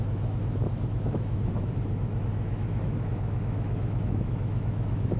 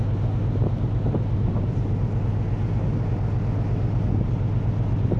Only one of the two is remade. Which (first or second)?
first